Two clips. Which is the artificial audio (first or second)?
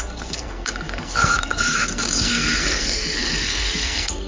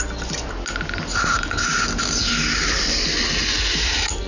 first